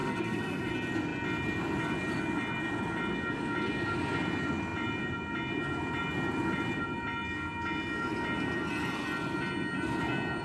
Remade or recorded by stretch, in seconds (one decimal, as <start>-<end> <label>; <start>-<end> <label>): 0.0-0.7 remade; 0.7-10.4 recorded